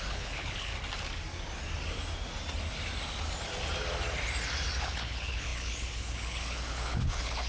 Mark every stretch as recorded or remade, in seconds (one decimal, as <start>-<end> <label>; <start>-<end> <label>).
0.0-0.7 remade; 0.7-4.8 recorded; 4.8-7.5 remade